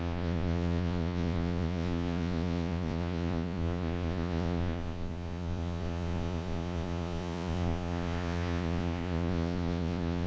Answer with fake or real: fake